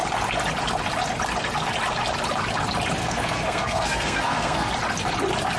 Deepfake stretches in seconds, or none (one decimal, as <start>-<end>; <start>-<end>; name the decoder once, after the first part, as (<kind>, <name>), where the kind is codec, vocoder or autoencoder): 3.0-4.7 (codec, SNAC)